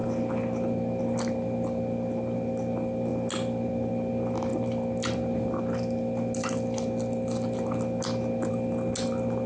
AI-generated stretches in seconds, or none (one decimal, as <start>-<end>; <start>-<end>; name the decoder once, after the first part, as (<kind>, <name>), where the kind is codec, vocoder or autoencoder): none